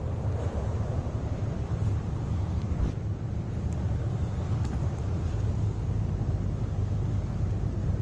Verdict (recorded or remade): recorded